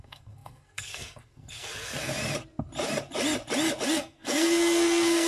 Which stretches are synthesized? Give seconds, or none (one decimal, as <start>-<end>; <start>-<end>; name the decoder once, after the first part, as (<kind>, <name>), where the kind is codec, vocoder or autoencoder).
0.0-2.1 (codec, SNAC); 3.9-5.3